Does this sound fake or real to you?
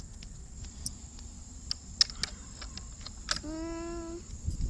real